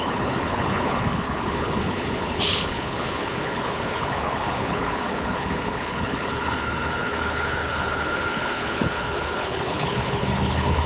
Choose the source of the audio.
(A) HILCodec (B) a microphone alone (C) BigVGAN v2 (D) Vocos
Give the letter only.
A